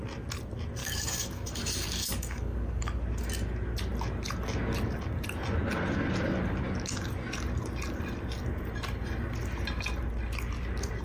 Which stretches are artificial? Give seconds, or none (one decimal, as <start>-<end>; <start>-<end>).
0.8-2.8